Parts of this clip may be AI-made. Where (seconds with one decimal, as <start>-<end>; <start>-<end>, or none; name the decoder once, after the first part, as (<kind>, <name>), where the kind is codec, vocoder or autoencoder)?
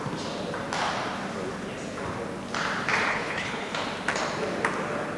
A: 3.1-3.7 (codec, HILCodec)